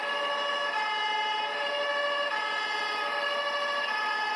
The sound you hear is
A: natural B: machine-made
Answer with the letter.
A